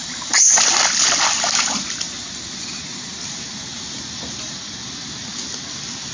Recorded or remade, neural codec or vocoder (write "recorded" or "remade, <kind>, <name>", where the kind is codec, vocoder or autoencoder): recorded